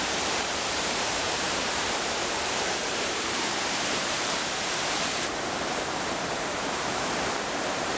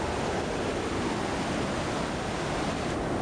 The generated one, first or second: first